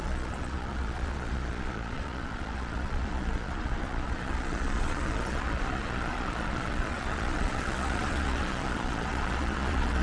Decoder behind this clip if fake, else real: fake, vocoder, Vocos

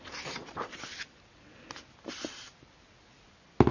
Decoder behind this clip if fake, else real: real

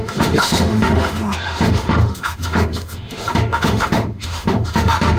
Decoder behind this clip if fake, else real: fake, autoencoder, DAC-VAE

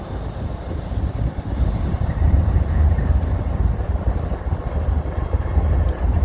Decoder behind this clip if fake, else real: real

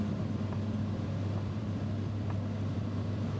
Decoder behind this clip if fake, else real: fake, vocoder, BigVGAN v2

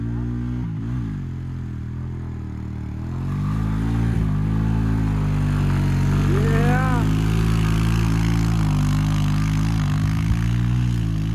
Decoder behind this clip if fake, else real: real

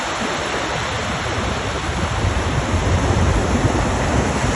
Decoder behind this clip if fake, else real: real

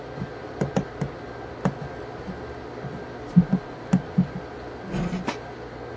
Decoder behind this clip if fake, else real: real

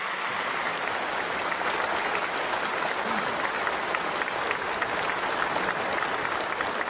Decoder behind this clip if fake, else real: real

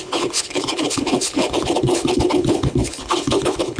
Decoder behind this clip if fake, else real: fake, codec, HILCodec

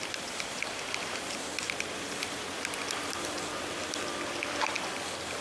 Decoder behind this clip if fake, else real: real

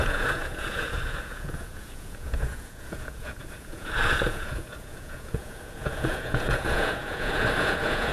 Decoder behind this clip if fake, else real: fake, vocoder, Vocos